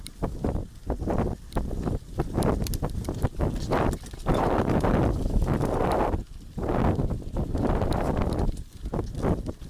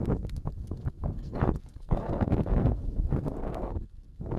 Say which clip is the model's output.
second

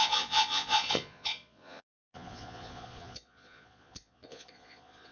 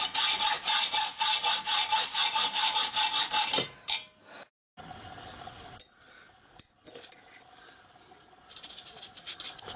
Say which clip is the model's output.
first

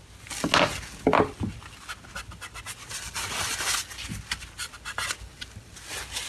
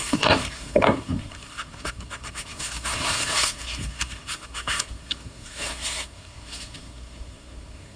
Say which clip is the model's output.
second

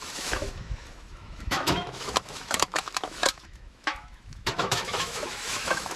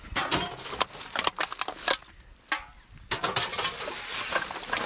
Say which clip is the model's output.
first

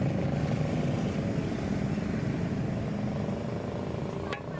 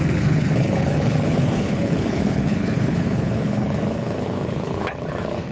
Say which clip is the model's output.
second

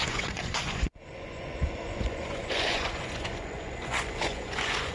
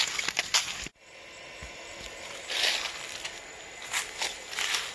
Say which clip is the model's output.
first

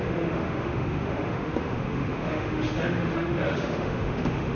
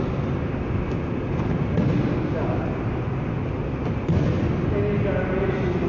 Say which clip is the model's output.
first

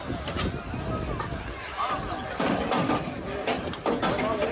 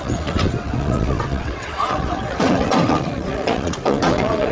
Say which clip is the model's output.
second